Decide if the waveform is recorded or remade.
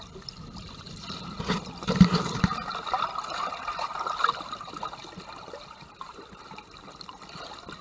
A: recorded